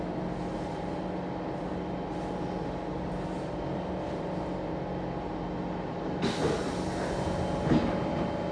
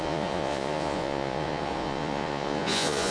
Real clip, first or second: first